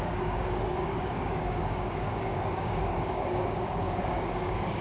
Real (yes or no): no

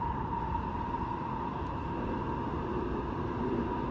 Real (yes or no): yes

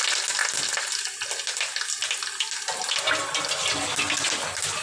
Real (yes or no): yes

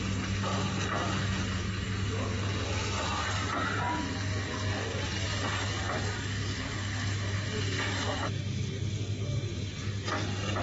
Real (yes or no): yes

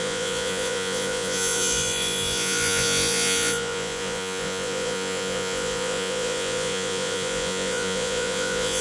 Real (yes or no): no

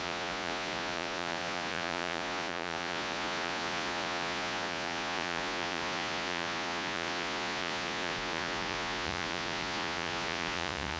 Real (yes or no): no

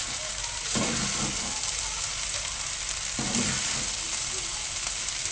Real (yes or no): yes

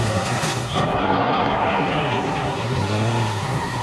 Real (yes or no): no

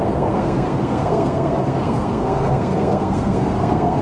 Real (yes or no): no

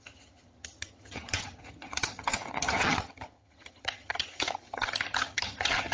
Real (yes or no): no